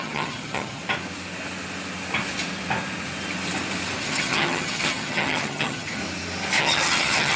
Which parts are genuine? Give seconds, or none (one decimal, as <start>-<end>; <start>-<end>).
0.8-4.0; 6.0-6.6